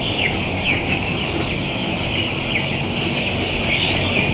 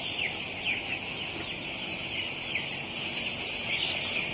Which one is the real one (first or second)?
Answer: second